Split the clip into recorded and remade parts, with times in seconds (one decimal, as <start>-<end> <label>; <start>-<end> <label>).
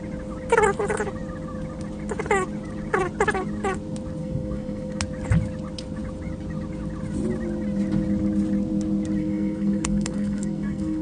0.0-4.2 recorded; 4.2-5.0 remade; 5.0-9.2 recorded; 9.2-11.0 remade